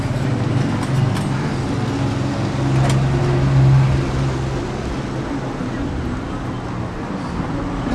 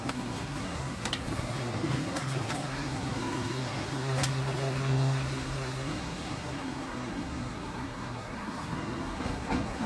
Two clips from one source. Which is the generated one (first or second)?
second